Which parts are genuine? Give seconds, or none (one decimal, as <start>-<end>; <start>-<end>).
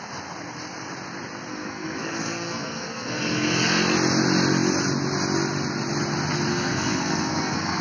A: 0.0-1.5; 3.8-6.5